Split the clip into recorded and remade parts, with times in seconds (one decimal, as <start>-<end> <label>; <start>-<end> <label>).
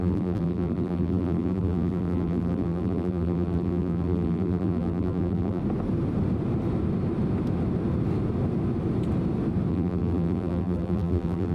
0.0-5.6 remade; 5.6-9.7 recorded; 9.7-11.5 remade